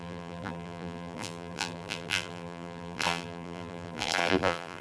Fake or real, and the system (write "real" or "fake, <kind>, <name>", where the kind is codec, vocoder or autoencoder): fake, vocoder, BigVGAN v2